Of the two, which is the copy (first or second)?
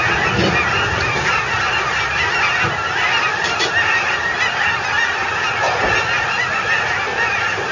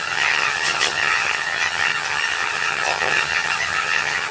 second